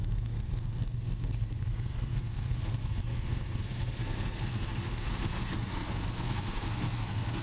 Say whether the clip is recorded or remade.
remade